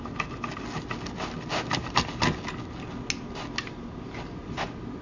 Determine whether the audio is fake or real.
real